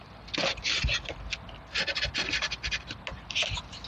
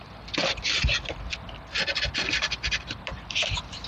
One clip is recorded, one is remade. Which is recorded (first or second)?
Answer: first